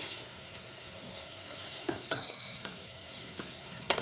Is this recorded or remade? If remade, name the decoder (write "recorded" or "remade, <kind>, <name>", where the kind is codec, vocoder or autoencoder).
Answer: remade, codec, SNAC